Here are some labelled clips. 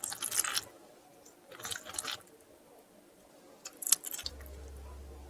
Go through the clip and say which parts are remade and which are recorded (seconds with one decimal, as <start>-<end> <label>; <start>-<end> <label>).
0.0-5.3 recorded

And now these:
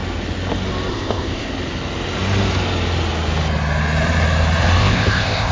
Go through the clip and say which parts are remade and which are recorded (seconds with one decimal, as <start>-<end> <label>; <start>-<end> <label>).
0.0-0.9 recorded; 0.9-1.5 remade; 1.5-4.8 recorded; 4.8-5.5 remade

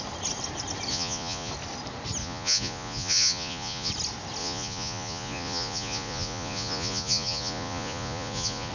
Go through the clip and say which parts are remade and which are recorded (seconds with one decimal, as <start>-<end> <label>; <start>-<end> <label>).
0.0-0.9 recorded; 0.9-1.5 remade; 1.5-2.2 recorded; 2.2-3.9 remade; 3.9-4.4 recorded; 4.4-8.7 remade

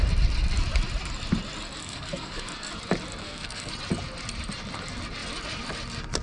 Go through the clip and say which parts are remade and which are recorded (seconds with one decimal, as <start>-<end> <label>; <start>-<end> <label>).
0.0-1.8 recorded; 1.8-2.7 remade; 2.7-3.2 recorded; 3.2-3.7 remade; 3.7-6.2 recorded

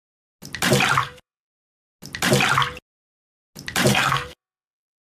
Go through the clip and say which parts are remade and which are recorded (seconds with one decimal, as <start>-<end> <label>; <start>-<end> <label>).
0.0-1.0 recorded; 1.0-1.5 remade; 1.5-3.9 recorded; 3.9-5.0 remade

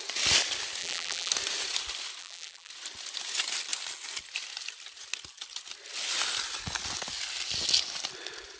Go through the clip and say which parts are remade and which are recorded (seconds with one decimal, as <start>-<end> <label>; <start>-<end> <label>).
0.0-0.8 recorded; 0.8-1.3 remade; 1.3-2.2 recorded; 2.2-2.7 remade; 2.7-8.6 recorded

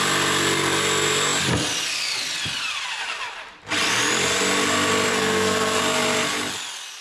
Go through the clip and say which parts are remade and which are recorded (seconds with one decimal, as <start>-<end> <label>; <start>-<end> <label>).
0.0-5.1 recorded; 5.1-5.8 remade; 5.8-7.0 recorded